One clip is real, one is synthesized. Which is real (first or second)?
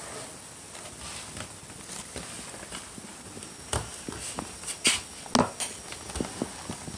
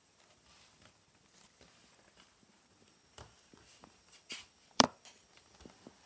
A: first